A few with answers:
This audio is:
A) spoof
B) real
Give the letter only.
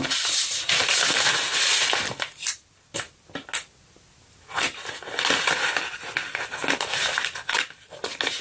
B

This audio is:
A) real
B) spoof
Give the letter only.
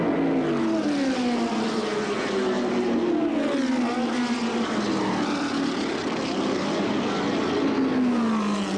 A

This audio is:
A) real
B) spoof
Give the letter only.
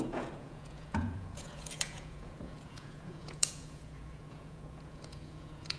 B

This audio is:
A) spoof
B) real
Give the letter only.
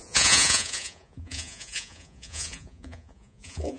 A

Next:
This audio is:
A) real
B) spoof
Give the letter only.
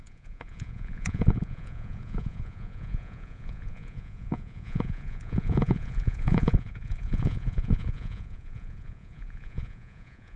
B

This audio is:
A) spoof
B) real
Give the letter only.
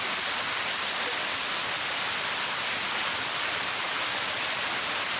B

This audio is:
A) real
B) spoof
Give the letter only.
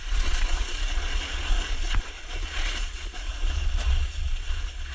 B